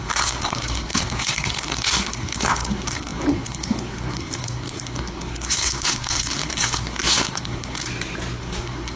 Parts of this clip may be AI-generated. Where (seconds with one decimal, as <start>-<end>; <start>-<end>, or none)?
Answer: 0.0-7.9; 8.4-9.0

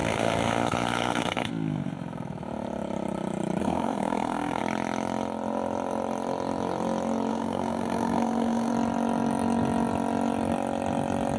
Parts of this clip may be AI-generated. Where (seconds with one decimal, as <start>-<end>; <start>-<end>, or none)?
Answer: 0.0-1.5; 3.6-4.6; 7.3-8.7